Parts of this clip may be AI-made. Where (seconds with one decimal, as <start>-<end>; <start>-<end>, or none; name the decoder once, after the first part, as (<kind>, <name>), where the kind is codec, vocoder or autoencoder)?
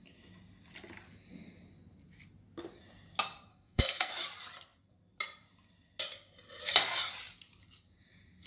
3.5-4.1 (codec, SNAC)